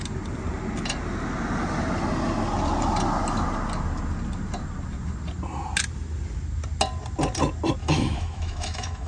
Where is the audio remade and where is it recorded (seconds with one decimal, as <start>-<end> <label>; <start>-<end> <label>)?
0.0-7.8 recorded; 7.8-9.1 remade